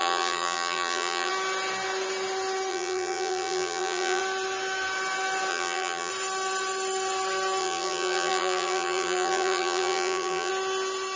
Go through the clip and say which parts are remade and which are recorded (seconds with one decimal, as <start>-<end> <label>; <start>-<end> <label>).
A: 0.0-1.3 remade; 1.3-2.7 recorded; 2.7-4.2 remade; 4.2-5.5 recorded; 5.5-6.1 remade; 6.1-7.6 recorded; 7.6-10.5 remade; 10.5-11.2 recorded